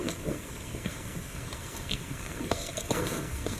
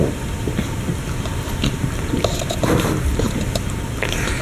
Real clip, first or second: second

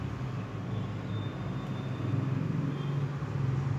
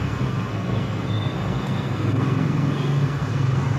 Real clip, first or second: first